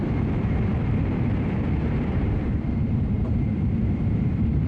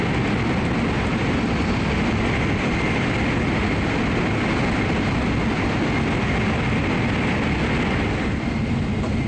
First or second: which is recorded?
second